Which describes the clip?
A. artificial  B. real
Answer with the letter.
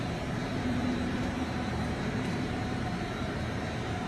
A